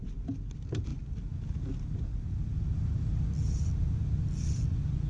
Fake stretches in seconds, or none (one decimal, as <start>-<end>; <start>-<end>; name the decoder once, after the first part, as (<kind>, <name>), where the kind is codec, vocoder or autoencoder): none

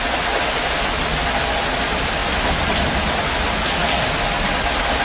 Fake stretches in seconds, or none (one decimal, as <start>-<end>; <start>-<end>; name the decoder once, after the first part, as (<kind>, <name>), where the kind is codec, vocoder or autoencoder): none

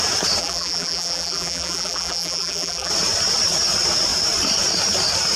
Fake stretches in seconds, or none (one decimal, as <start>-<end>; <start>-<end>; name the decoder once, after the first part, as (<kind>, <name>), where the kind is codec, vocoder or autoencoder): 0.4-2.9 (vocoder, BigVGAN v2)

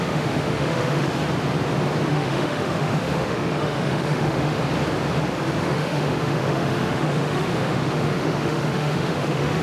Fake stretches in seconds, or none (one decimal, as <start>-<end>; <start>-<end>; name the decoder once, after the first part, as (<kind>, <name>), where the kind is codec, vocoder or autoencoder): 0.0-1.1 (autoencoder, DAC-VAE); 2.1-4.6; 5.6-9.6

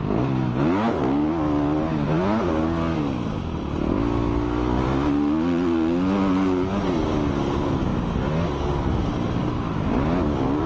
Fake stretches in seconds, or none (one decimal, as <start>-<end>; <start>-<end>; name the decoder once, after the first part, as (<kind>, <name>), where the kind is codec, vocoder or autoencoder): none